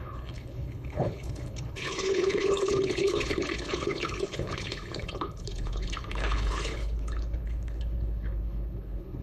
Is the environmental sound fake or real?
fake